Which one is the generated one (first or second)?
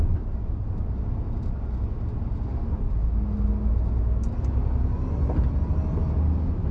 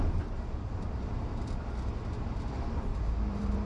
second